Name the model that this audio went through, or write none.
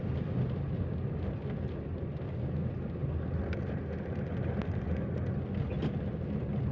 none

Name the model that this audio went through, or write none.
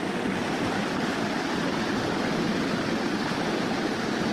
none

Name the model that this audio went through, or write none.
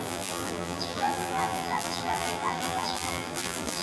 vocoder, BigVGAN v2